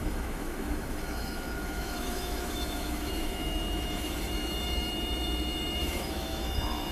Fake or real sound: fake